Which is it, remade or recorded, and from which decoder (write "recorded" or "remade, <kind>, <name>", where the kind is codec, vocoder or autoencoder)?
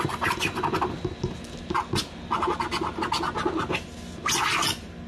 recorded